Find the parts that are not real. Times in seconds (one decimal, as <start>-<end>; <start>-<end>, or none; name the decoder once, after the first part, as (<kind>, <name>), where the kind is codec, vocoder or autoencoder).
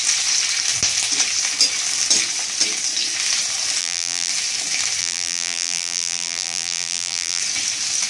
3.8-4.3 (vocoder, BigVGAN v2); 5.0-7.4